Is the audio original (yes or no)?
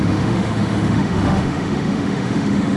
no